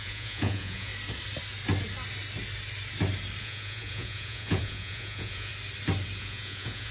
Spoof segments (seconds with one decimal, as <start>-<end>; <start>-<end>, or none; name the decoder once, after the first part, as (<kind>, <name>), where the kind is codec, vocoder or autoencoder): 0.0-0.9 (vocoder, Vocos); 3.4-5.5; 6.2-6.9